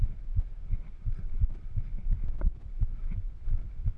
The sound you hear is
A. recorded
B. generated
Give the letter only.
A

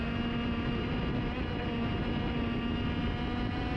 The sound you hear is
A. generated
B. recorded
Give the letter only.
B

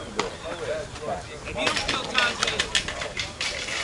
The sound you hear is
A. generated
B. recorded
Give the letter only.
B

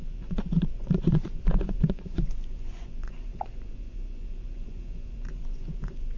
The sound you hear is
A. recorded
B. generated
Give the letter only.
B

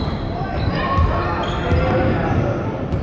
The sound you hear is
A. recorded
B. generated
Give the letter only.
A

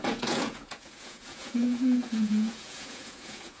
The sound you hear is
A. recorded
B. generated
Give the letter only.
B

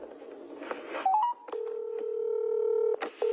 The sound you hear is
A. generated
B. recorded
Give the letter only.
B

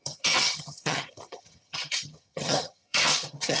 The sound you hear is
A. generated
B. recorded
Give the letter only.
A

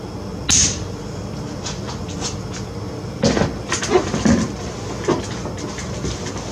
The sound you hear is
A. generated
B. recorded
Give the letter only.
B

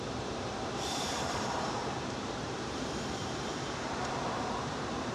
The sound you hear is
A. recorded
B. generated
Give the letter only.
B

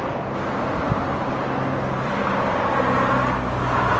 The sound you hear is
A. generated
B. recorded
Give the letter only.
B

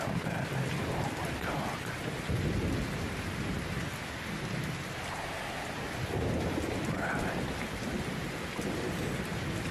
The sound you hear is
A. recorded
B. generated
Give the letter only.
A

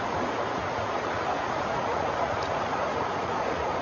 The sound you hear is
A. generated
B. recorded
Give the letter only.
A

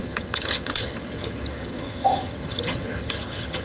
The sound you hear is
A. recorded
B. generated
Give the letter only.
B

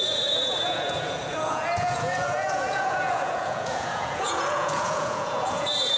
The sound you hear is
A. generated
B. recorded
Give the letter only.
A